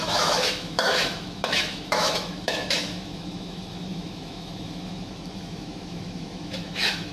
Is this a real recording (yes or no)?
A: no